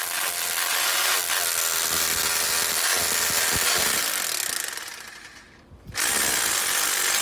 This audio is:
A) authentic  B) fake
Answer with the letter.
A